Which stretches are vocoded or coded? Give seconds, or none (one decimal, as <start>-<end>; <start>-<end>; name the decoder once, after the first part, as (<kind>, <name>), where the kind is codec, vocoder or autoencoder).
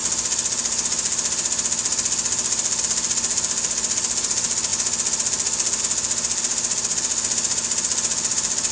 none